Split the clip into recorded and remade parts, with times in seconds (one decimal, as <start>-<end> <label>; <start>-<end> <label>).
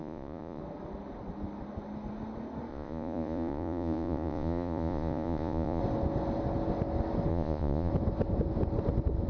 0.0-0.6 remade; 0.6-2.7 recorded; 2.7-5.8 remade; 5.8-7.3 recorded; 7.3-7.9 remade; 7.9-9.3 recorded